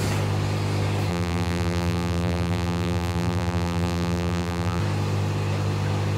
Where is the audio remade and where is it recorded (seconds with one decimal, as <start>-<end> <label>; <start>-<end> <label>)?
0.0-1.1 recorded; 1.1-4.8 remade; 4.8-6.2 recorded